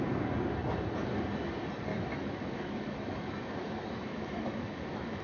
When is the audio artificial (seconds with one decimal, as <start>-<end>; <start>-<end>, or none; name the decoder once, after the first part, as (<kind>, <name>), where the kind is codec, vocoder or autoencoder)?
1.9-5.2 (autoencoder, DAC-VAE)